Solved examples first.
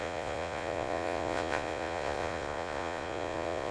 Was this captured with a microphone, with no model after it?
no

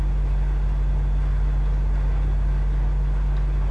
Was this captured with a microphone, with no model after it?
yes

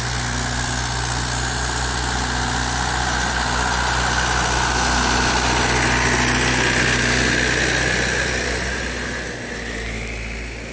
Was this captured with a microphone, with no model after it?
yes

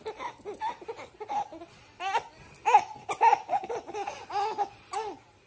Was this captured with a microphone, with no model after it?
yes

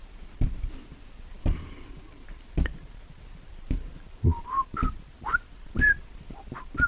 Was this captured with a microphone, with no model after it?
no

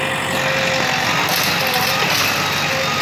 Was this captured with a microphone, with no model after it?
yes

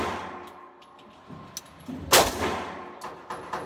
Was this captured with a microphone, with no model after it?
yes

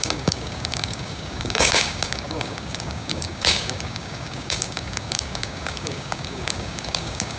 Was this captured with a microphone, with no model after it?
no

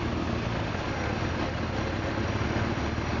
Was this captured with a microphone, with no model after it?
yes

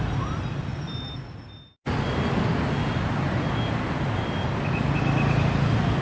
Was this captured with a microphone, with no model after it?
yes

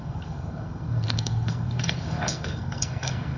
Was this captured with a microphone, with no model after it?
no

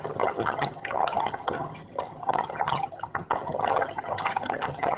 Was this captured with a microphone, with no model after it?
no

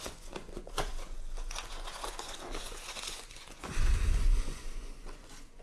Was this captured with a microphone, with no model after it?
no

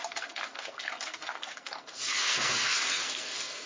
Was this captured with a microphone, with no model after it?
no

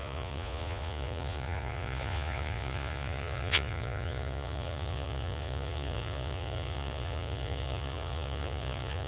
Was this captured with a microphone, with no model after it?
no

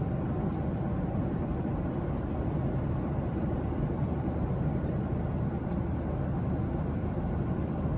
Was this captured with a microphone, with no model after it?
no